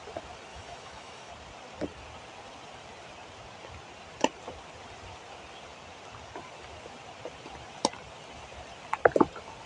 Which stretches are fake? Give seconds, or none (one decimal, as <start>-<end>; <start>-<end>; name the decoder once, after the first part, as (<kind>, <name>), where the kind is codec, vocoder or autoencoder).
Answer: 0.5-1.3 (autoencoder, DAC-VAE)